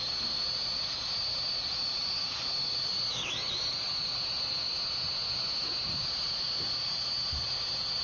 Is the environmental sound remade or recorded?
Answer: recorded